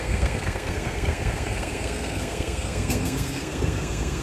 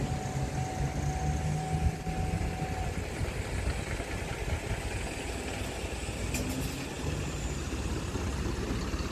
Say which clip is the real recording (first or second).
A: second